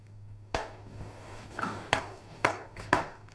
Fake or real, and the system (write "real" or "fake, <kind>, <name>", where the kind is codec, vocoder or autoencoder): fake, codec, DAC